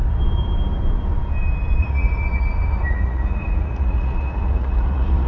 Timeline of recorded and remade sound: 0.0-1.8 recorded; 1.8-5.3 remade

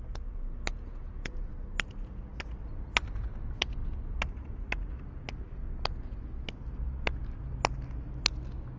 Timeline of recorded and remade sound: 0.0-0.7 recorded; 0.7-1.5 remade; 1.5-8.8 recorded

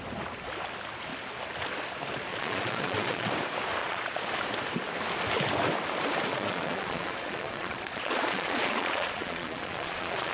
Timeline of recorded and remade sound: 0.0-2.3 recorded; 2.3-3.3 remade; 3.3-3.8 recorded; 3.8-4.3 remade; 4.3-6.3 recorded; 6.3-10.3 remade

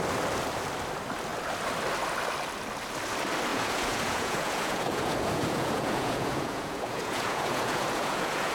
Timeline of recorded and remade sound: 0.0-3.5 recorded; 3.5-8.5 remade

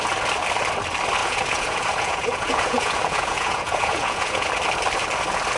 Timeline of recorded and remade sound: 0.0-1.2 recorded; 1.2-4.5 remade; 4.5-5.6 recorded